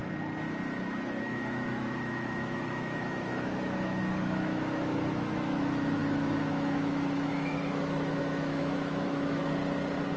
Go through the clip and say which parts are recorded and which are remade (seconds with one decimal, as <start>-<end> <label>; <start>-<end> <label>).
0.0-1.2 recorded; 1.2-9.4 remade; 9.4-10.2 recorded